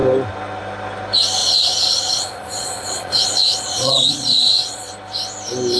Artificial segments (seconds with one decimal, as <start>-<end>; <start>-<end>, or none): 1.4-4.9